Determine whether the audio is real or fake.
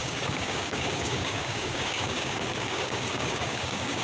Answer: fake